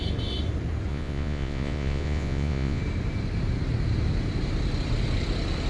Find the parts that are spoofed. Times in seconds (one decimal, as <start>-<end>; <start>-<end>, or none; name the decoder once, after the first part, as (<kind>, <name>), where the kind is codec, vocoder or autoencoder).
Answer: 0.9-2.8 (vocoder, Vocos)